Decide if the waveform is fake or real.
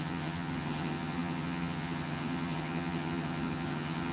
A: fake